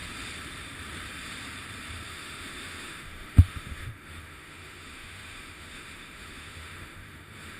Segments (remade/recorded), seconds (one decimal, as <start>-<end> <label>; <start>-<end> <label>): 0.0-2.1 recorded; 2.1-7.6 remade